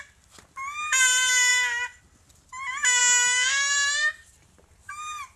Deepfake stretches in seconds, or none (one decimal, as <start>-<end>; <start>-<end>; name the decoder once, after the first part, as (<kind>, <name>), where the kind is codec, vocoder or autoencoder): none